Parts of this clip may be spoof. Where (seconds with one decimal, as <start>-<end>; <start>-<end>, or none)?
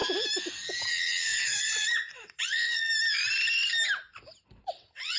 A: 0.9-2.9; 4.7-5.2